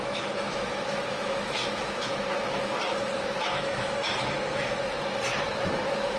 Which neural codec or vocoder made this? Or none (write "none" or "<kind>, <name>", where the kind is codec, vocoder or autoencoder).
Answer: autoencoder, DAC-VAE